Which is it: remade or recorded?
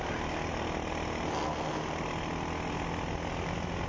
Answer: recorded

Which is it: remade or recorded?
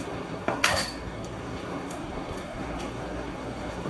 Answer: remade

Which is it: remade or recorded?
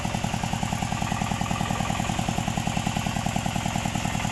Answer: recorded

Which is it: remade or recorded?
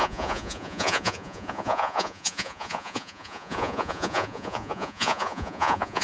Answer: remade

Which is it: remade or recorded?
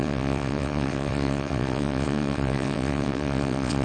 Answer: remade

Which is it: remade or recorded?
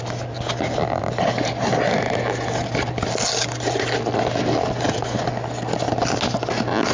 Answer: recorded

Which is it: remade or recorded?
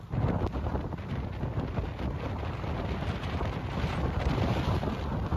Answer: recorded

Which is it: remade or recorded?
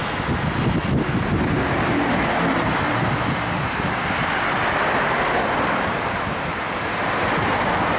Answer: recorded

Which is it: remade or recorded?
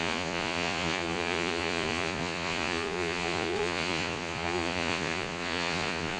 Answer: remade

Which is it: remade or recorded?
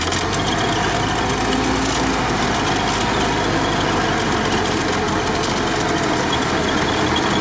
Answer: recorded